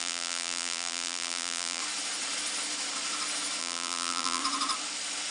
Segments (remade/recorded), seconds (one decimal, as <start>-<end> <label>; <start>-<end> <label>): 0.0-1.8 remade; 1.8-3.6 recorded; 3.6-4.4 remade; 4.4-5.3 recorded